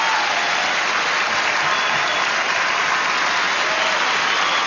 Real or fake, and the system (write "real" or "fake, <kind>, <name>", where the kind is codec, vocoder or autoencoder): real